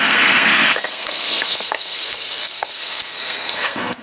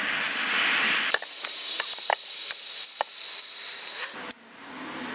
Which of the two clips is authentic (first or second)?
second